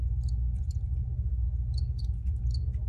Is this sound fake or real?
real